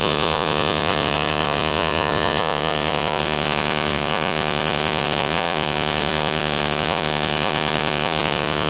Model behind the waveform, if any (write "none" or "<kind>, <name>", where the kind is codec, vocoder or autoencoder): vocoder, Vocos